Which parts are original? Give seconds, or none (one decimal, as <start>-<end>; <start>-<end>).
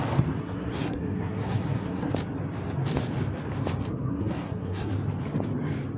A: 0.0-0.4; 2.1-3.9; 4.9-6.0